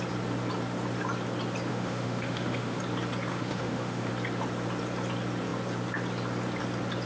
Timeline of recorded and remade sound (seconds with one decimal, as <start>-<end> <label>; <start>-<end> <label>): 0.0-1.7 recorded; 1.7-2.8 remade; 2.8-3.3 recorded; 3.3-4.1 remade; 4.1-7.1 recorded